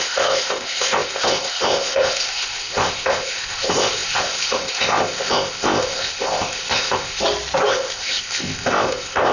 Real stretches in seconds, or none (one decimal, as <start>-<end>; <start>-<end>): 7.2-7.7